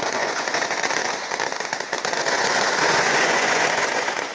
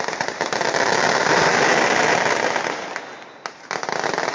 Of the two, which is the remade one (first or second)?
first